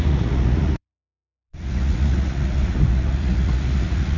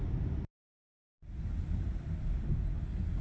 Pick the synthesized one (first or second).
first